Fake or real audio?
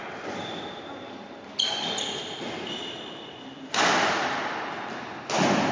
real